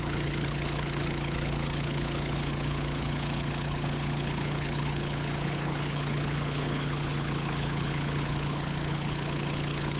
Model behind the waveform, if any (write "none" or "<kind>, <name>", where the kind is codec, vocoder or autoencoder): codec, HILCodec